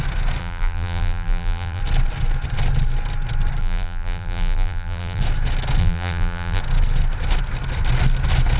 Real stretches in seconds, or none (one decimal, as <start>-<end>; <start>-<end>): 0.0-0.4; 1.8-3.6; 5.2-5.8; 6.6-8.6